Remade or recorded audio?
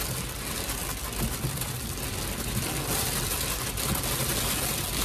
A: recorded